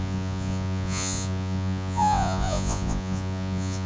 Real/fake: fake